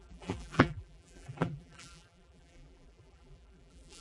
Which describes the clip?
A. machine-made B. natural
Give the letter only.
A